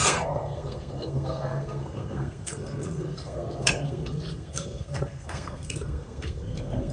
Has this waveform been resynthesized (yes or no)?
yes